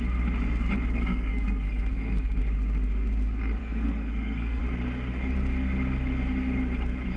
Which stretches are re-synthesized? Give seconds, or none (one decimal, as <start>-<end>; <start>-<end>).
1.0-2.4; 3.6-4.6